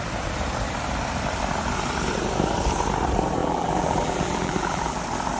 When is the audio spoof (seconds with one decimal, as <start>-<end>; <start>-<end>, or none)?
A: 3.4-5.0